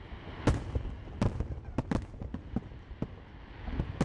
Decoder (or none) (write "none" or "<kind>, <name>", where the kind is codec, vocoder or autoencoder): none